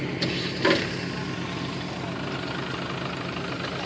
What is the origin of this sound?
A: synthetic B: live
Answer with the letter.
B